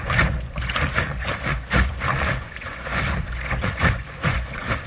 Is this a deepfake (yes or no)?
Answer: yes